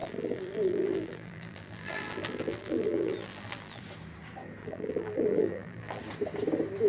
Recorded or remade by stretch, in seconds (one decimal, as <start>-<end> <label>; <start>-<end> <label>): 0.0-3.8 remade; 3.8-4.6 recorded; 4.6-6.0 remade; 6.0-6.9 recorded